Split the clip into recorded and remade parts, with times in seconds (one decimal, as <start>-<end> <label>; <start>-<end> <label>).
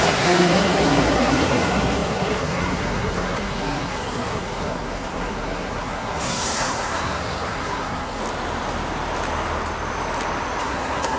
0.0-8.2 remade; 8.2-10.6 recorded; 10.6-11.2 remade